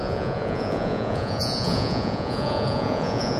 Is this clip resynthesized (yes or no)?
yes